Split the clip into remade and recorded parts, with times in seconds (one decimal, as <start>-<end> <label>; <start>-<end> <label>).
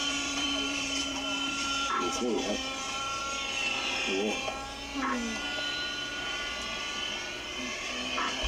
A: 0.0-3.2 remade; 3.2-6.1 recorded; 6.1-6.9 remade; 6.9-8.5 recorded